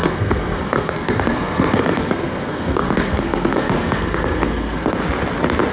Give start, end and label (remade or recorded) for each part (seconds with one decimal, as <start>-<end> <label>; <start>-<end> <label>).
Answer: 0.0-5.0 remade; 5.0-5.7 recorded

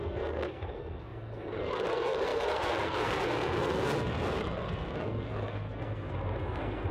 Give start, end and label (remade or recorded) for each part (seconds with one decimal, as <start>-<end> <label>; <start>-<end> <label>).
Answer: 0.0-6.9 remade